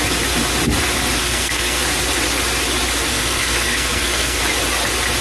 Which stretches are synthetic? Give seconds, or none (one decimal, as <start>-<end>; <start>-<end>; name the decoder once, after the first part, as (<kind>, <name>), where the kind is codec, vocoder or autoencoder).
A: 1.2-1.8 (codec, SNAC); 3.1-4.4